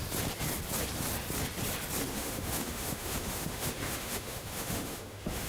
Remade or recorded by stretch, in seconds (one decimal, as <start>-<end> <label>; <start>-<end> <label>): 0.0-2.1 recorded; 2.1-5.5 remade